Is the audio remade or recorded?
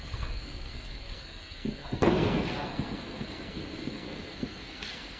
remade